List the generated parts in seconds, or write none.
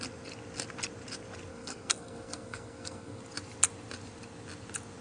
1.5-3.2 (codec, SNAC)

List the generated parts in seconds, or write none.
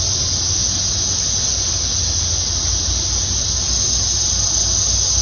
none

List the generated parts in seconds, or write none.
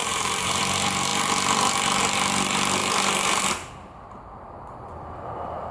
0.0-0.6 (vocoder, BigVGAN v2); 2.8-3.4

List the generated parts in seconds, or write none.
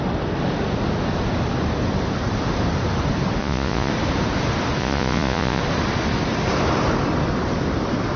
3.4-3.9 (vocoder, Vocos); 4.8-5.6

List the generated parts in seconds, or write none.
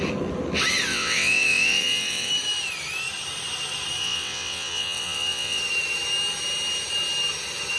0.9-2.3 (vocoder, WaveNeXt); 4.0-5.6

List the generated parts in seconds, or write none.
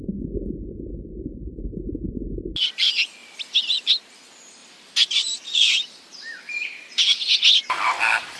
1.1-1.7 (vocoder, BigVGAN v2); 4.6-7.0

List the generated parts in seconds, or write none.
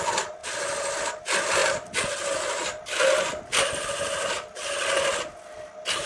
none